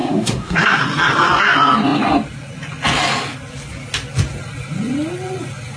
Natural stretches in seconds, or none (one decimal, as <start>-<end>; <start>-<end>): 0.8-5.8